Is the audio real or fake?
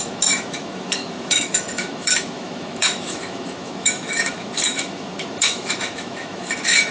fake